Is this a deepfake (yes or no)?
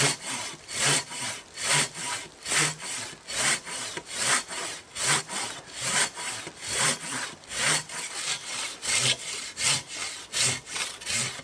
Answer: no